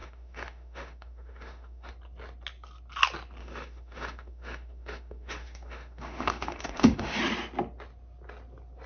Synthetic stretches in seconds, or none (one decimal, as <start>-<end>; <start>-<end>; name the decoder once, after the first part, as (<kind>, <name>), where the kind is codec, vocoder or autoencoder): 0.0-1.9 (autoencoder, DAC-VAE); 3.4-7.2